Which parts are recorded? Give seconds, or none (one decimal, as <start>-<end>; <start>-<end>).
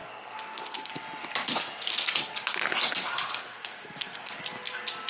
0.9-3.4; 4.3-5.1